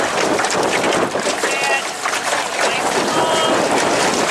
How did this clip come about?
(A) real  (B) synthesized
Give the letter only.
A